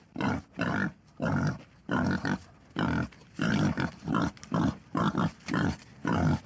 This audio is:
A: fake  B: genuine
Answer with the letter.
B